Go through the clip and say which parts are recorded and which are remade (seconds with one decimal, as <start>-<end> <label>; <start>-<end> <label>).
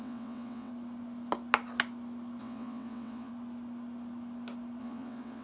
0.0-0.7 remade; 0.7-2.4 recorded; 2.4-3.3 remade; 3.3-4.8 recorded; 4.8-5.4 remade